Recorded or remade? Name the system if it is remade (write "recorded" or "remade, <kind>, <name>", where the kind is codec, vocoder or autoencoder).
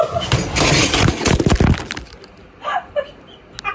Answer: recorded